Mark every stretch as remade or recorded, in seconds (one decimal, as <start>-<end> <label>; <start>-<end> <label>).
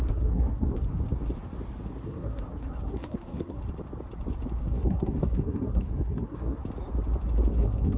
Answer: 0.0-0.9 remade; 0.9-1.9 recorded; 1.9-3.6 remade; 3.6-4.6 recorded; 4.6-6.6 remade; 6.6-7.5 recorded; 7.5-8.0 remade